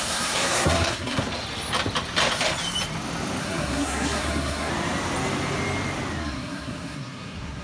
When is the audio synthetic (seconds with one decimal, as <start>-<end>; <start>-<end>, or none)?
0.0-1.2; 3.4-4.7; 6.2-7.6

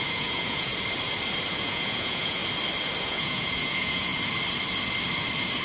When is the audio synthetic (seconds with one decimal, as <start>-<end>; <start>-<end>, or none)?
0.0-0.7; 1.5-2.4; 3.0-4.1